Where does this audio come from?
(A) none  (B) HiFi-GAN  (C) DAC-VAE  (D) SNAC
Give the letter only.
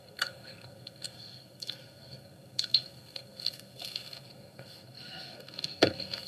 D